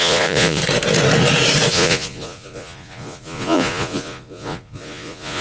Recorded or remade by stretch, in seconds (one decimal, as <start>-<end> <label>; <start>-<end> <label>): 0.0-0.6 remade; 0.6-1.7 recorded; 1.7-5.4 remade